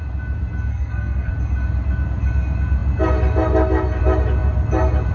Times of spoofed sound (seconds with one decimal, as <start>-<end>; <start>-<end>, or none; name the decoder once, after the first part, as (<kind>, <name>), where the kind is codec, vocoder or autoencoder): 0.7-1.3 (codec, SNAC)